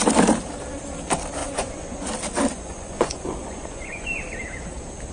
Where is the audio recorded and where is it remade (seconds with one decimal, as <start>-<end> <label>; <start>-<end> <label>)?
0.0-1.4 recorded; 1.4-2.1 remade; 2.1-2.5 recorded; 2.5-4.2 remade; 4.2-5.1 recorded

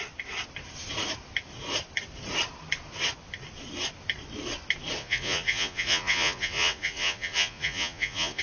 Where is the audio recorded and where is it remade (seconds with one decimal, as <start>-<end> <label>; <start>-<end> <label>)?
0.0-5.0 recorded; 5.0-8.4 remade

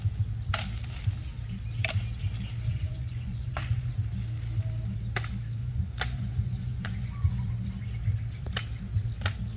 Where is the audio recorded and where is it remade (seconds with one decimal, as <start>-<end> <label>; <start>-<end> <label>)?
0.0-2.7 recorded; 2.7-3.9 remade; 3.9-5.6 recorded; 5.6-7.5 remade; 7.5-9.6 recorded

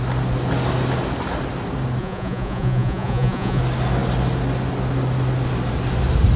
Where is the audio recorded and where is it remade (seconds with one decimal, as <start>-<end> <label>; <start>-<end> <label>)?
0.0-2.0 recorded; 2.0-3.6 remade; 3.6-6.4 recorded